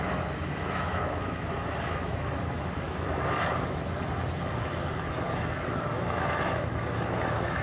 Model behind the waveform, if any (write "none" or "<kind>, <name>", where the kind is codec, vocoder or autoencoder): autoencoder, DAC-VAE